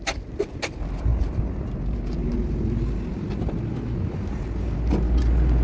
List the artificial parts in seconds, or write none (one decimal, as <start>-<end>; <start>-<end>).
none